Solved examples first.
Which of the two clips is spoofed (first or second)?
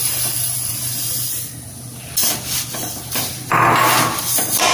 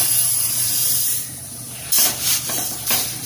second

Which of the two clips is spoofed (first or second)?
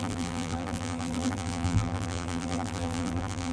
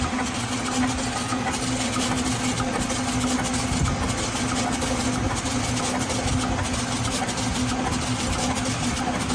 first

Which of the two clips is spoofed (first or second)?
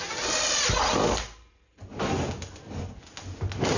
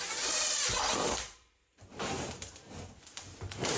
second